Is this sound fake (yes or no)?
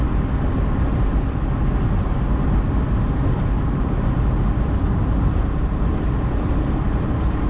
no